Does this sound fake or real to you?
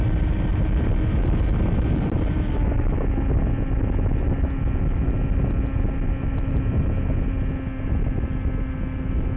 real